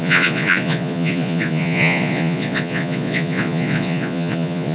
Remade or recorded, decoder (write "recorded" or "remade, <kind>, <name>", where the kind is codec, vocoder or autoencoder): remade, vocoder, Vocos